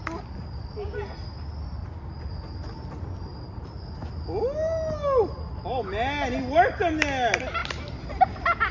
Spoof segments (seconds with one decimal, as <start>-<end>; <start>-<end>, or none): none